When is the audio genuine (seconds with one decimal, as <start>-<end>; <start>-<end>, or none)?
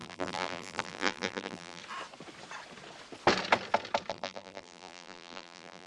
1.8-4.1